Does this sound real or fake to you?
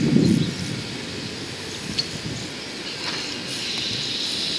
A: real